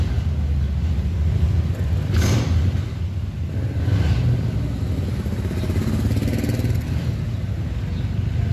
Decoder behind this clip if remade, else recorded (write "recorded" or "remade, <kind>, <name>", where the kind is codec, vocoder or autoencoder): recorded